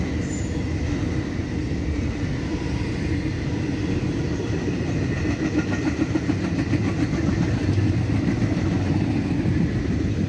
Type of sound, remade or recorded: recorded